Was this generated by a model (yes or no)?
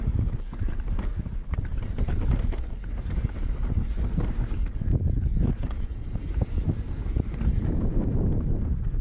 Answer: no